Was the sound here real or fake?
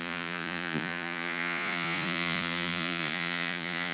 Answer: fake